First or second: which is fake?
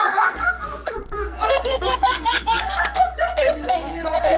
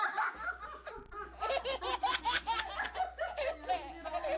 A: first